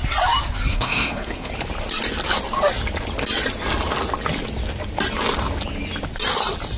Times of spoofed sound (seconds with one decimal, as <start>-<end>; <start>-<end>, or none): 0.7-1.5